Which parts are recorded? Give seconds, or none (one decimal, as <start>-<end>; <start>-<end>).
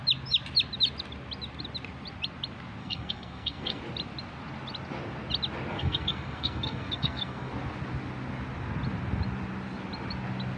0.0-2.8; 3.8-5.7; 7.5-10.6